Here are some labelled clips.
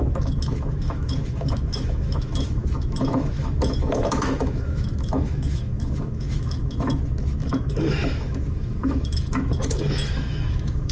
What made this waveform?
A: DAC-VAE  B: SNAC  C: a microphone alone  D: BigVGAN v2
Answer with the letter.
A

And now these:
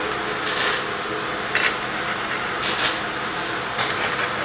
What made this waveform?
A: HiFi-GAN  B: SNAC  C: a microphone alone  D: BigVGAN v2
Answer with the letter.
C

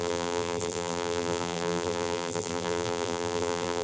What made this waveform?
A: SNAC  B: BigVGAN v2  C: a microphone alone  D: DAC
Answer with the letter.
B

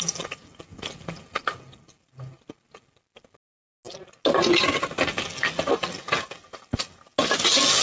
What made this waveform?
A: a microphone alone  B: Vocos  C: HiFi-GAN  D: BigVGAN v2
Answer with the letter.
A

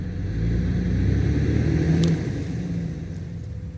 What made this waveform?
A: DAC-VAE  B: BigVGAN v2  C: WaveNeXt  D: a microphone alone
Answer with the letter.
D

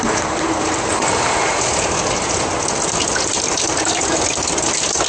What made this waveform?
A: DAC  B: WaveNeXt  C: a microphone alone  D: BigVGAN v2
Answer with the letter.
D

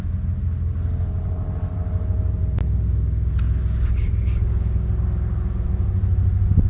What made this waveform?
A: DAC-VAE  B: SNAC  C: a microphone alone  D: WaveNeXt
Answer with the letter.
C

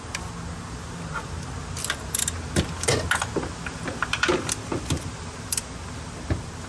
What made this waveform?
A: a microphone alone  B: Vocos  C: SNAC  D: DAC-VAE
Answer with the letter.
A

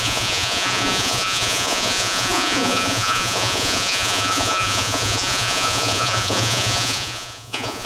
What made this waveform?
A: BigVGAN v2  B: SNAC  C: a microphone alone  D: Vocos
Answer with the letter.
D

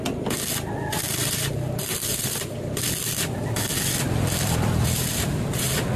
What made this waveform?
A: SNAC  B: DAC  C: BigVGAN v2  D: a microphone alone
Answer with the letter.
D